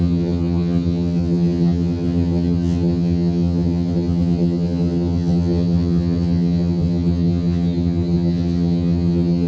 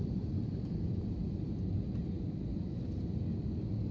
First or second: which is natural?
second